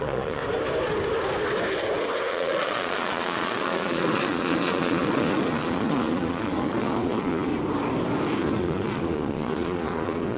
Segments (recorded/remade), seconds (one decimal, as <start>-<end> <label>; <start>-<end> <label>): 0.0-0.4 remade; 0.4-2.3 recorded; 2.3-7.5 remade; 7.5-8.4 recorded; 8.4-10.4 remade